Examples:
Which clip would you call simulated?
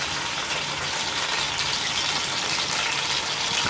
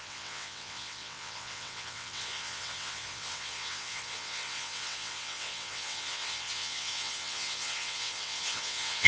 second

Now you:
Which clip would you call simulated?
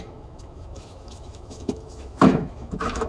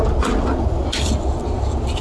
first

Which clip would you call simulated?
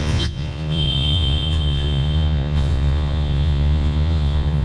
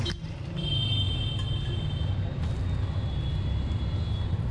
first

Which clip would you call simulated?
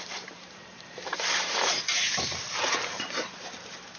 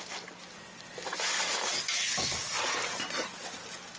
first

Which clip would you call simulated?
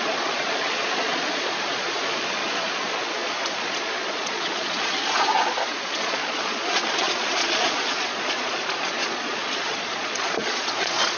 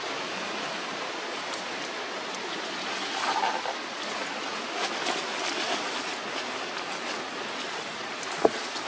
first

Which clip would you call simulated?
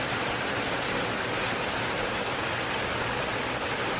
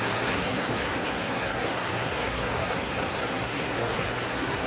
second